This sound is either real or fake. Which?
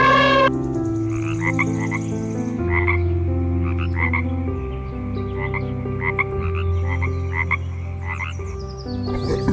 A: real